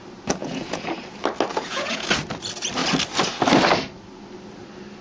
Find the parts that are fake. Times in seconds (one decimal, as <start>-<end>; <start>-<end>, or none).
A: 0.4-0.9; 1.5-2.1

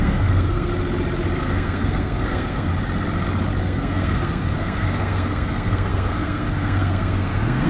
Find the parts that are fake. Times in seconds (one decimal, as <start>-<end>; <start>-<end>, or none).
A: 0.0-0.7; 1.4-2.7; 3.6-7.7